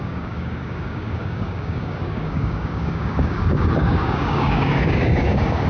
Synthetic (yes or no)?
yes